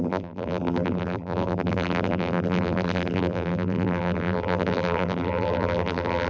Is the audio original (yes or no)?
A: no